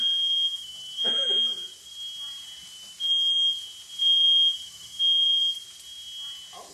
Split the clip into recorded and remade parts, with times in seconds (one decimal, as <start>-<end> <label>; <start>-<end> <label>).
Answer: 0.0-1.5 remade; 1.5-4.0 recorded; 4.0-5.4 remade; 5.4-6.7 recorded